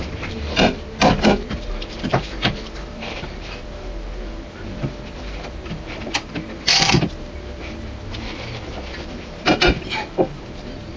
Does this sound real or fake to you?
fake